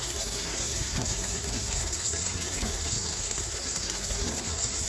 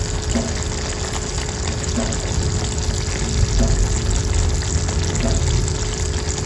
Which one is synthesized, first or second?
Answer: first